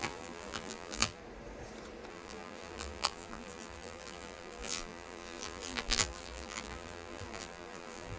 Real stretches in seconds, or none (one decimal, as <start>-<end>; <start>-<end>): 1.2-2.1